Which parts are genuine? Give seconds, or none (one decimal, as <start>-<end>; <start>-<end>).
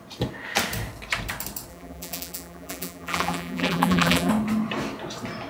0.0-1.7; 4.3-5.5